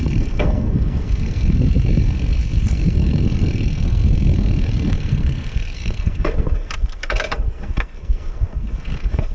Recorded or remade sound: remade